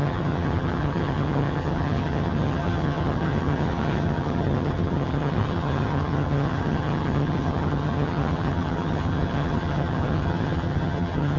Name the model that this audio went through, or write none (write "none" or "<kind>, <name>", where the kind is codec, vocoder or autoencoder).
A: vocoder, HiFi-GAN